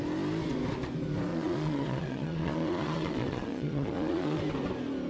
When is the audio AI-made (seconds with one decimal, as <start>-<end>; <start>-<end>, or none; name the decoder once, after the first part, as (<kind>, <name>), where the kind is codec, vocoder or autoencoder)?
1.3-4.4 (vocoder, Vocos)